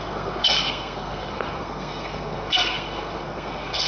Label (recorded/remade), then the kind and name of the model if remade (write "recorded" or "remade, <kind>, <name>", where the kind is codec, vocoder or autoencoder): remade, codec, SNAC